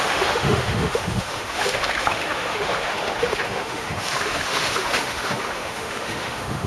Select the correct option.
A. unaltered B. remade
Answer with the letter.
B